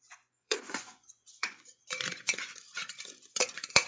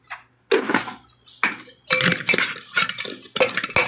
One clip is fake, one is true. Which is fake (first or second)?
first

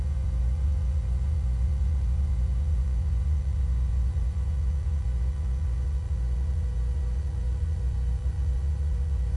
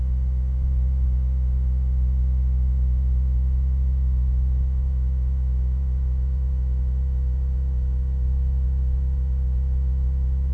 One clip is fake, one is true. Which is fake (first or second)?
first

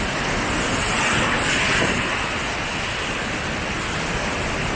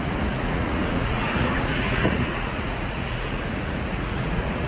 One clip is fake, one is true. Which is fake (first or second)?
second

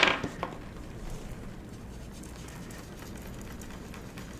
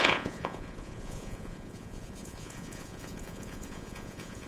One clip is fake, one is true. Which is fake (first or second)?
second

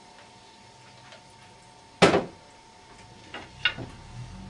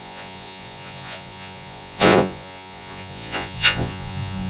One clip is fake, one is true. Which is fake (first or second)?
second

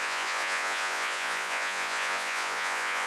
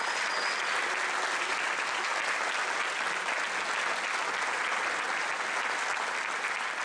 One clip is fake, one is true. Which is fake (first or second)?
first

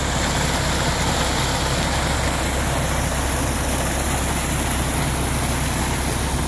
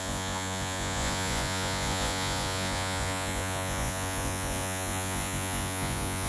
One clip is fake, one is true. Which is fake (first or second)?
second